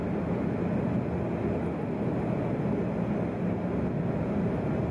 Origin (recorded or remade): recorded